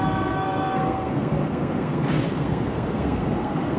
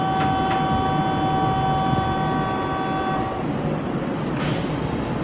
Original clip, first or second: second